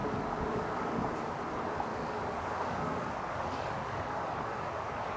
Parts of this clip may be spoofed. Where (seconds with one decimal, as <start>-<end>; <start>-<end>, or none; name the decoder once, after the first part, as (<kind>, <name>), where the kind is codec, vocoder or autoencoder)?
0.0-1.0 (codec, DAC); 1.9-5.2